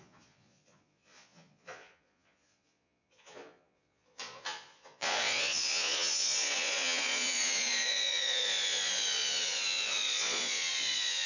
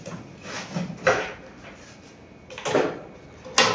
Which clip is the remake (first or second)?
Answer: first